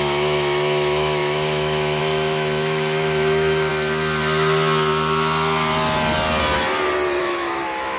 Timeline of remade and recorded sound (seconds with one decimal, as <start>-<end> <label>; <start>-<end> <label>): 0.0-3.7 remade; 3.7-7.2 recorded; 7.2-8.0 remade